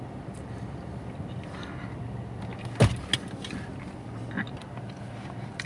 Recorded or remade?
recorded